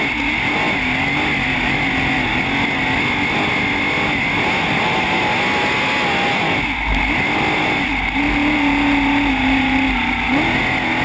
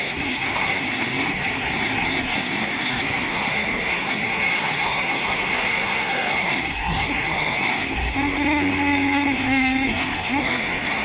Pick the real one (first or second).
first